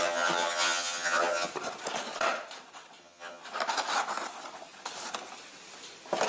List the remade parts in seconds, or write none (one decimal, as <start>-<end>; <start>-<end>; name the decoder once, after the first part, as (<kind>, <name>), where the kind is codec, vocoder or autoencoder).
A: 0.0-1.5 (vocoder, HiFi-GAN); 3.0-3.4

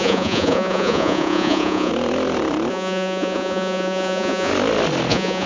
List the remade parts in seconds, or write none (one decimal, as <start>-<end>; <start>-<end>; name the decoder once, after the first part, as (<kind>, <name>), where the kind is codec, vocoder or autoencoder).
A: 0.0-1.9 (vocoder, Vocos); 2.7-4.5; 5.1-5.5

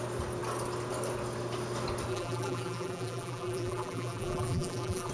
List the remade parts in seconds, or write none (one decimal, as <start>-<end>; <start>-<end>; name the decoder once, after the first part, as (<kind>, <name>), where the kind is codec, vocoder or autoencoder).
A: 2.1-5.1 (vocoder, BigVGAN v2)

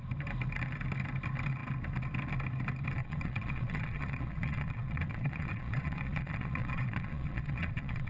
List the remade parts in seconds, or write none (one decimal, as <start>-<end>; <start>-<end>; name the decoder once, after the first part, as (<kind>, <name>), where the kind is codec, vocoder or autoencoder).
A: 3.0-8.1 (vocoder, Vocos)

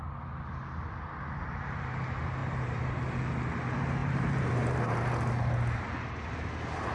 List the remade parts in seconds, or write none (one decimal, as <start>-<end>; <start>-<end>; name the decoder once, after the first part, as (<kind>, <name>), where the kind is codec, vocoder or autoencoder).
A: 2.4-3.0 (vocoder, BigVGAN v2); 4.0-5.0

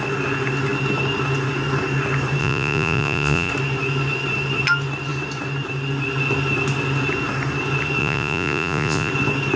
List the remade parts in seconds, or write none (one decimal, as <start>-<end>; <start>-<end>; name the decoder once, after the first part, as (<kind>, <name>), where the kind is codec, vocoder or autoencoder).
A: 2.4-3.5 (vocoder, Vocos); 8.0-9.1

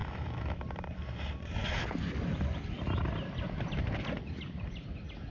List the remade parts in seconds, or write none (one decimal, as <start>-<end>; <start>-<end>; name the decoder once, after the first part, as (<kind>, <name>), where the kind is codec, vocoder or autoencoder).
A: 0.0-0.6 (autoencoder, DAC-VAE)